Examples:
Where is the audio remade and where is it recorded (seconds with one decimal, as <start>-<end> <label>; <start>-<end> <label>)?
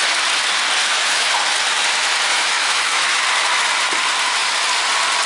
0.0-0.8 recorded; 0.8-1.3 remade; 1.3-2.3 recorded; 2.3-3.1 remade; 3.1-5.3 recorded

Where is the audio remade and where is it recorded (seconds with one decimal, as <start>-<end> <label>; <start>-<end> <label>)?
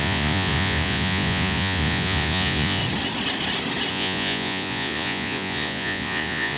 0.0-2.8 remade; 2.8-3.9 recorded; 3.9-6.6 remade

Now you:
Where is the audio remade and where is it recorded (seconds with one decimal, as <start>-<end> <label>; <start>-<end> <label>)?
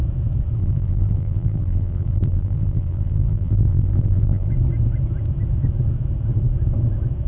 0.0-0.6 recorded; 0.6-4.5 remade; 4.5-7.3 recorded